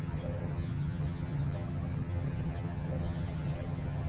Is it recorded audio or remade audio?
remade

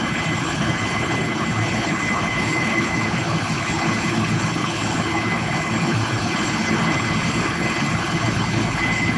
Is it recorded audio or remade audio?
remade